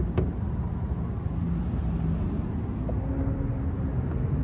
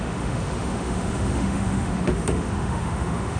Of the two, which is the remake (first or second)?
second